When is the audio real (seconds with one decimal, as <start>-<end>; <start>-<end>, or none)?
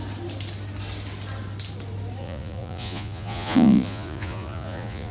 0.0-2.2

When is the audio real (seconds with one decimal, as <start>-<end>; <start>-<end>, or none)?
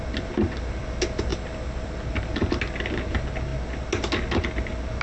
0.0-5.0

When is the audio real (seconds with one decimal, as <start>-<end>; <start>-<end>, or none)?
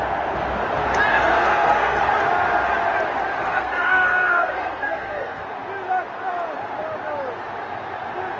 0.0-1.1; 2.0-3.4; 5.4-8.4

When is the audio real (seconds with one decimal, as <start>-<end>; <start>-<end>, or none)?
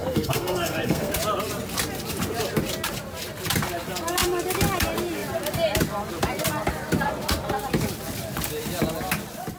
1.1-9.6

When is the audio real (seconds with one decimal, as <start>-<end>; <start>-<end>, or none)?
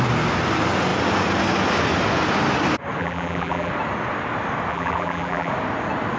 0.0-3.0; 3.7-4.7; 5.5-6.2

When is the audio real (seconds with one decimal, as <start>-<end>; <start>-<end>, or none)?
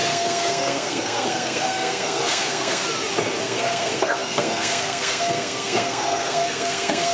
2.8-3.4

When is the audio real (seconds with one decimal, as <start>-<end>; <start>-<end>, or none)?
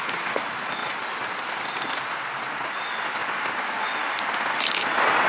0.0-5.3